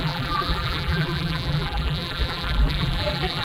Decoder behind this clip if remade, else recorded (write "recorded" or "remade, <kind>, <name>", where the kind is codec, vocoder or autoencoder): remade, vocoder, BigVGAN v2